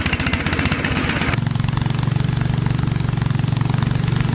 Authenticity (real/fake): real